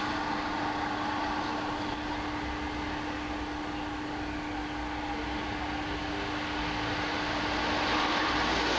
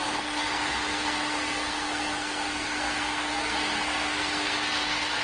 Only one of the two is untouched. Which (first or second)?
first